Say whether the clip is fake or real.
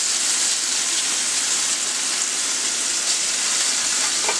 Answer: real